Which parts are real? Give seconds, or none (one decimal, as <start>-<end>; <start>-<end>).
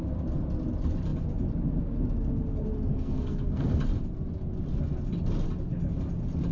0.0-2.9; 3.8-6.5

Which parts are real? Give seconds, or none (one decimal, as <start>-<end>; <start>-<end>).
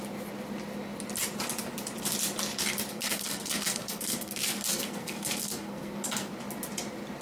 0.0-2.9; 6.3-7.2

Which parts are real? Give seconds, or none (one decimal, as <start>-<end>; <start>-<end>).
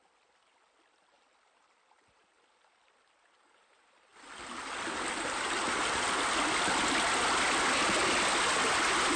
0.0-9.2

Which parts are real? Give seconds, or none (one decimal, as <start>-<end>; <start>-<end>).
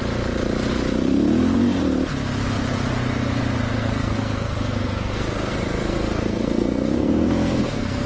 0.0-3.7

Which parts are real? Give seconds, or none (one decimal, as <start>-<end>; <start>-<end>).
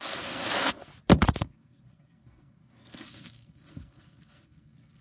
0.9-1.4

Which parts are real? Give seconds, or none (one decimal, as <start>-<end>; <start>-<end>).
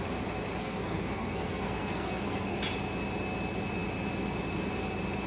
0.0-0.6; 2.6-5.3